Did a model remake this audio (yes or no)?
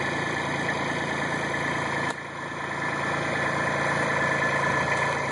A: no